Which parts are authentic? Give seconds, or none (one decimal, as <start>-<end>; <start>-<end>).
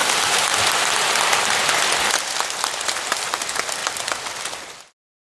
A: 0.0-5.3